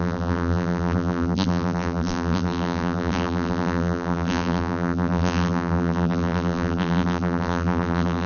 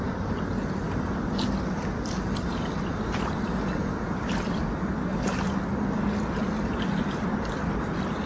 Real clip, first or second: second